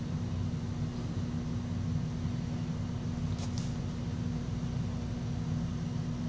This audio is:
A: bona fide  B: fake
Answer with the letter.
A